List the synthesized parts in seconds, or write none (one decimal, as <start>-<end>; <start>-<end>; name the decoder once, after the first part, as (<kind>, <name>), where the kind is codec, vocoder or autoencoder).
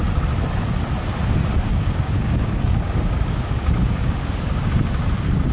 1.7-4.6 (codec, DAC)